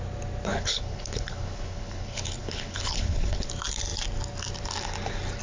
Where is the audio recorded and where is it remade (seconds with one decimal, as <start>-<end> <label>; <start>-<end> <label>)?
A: 0.0-0.5 recorded; 0.5-3.5 remade; 3.5-5.4 recorded